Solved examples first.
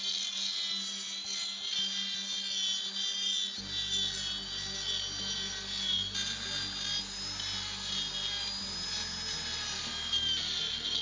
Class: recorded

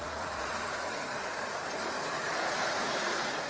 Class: remade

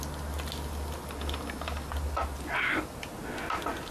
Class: recorded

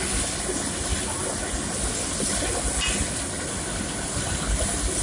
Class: recorded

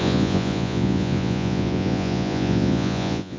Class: remade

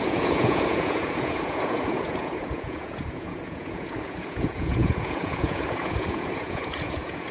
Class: remade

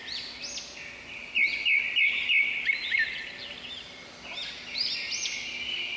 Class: recorded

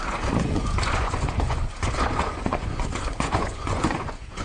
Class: remade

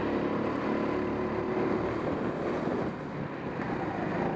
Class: recorded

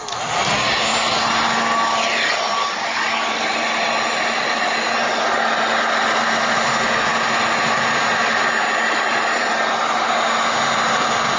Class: recorded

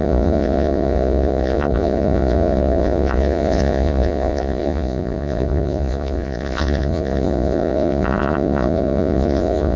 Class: remade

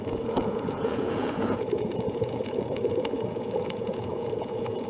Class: remade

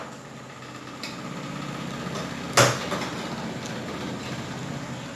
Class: recorded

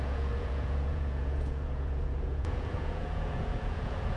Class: remade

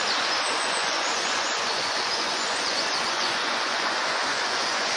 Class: remade